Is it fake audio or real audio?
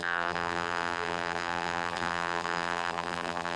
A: fake